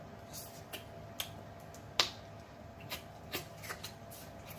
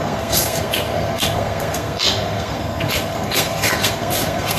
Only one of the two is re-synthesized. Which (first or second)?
second